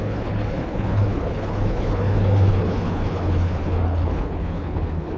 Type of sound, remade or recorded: remade